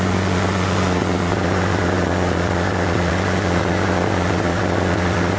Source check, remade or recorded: remade